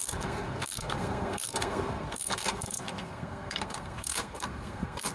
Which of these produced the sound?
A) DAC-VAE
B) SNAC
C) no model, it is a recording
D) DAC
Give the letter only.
B